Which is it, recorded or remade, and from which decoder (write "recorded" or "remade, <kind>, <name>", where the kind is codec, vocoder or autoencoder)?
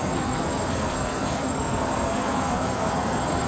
remade, codec, SNAC